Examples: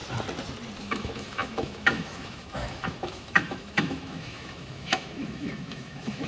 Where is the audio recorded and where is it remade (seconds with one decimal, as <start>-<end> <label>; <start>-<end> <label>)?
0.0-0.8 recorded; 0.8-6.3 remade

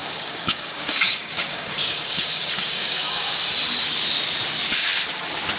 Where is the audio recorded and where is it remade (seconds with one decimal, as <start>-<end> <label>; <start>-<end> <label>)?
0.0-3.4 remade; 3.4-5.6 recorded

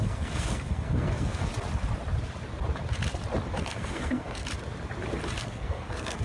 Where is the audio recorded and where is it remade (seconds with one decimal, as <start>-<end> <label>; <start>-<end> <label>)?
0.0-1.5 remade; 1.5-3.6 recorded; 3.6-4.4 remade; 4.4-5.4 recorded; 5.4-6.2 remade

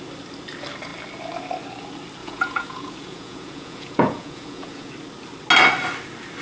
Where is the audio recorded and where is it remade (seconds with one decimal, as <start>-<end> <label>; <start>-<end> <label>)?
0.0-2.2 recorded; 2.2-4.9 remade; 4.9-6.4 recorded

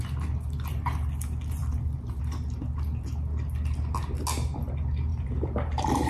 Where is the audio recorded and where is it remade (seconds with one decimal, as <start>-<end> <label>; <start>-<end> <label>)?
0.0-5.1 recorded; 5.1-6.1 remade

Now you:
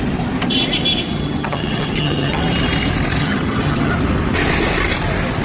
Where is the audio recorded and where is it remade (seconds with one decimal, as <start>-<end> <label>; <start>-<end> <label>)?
0.0-1.1 recorded; 1.1-2.4 remade; 2.4-3.2 recorded; 3.2-3.9 remade; 3.9-5.4 recorded